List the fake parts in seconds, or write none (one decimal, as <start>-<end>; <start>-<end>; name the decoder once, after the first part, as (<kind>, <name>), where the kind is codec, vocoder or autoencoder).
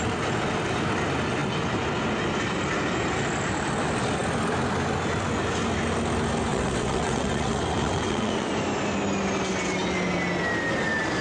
6.5-8.5 (vocoder, WaveNeXt)